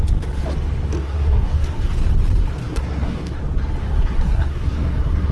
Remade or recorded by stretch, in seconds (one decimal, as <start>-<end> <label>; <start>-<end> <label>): 0.0-1.0 recorded; 1.0-1.9 remade; 1.9-2.6 recorded; 2.6-3.4 remade; 3.4-3.8 recorded; 3.8-5.3 remade